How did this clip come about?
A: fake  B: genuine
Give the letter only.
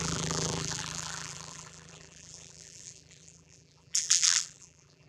A